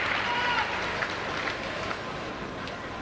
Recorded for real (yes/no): yes